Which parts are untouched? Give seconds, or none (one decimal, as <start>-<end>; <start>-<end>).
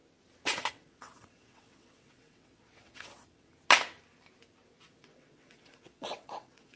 0.0-0.7; 3.5-5.0